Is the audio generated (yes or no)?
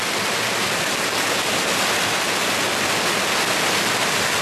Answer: no